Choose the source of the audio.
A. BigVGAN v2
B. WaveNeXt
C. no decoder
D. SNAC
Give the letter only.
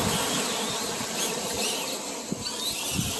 C